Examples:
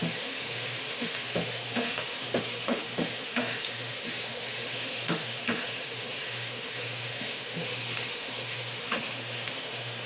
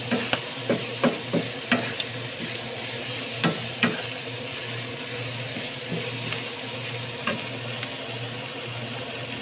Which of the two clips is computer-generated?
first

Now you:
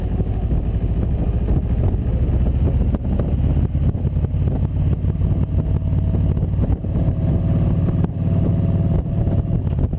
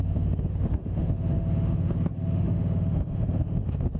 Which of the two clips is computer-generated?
second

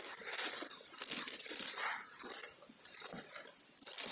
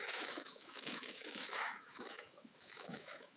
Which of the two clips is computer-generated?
second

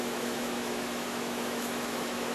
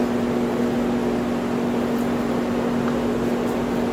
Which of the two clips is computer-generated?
first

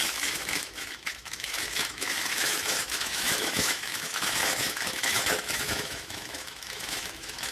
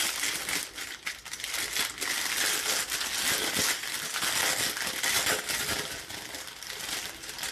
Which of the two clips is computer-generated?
first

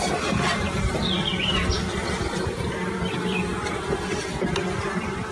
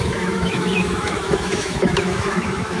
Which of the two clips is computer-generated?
second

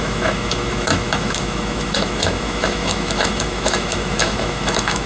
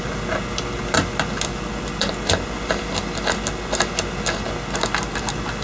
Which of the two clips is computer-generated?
first